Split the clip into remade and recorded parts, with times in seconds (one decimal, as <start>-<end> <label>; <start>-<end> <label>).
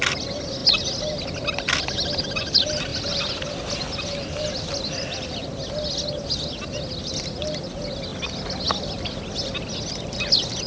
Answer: 0.0-10.7 recorded